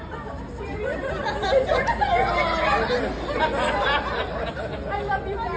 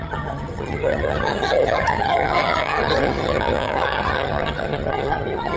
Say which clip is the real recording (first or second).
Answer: first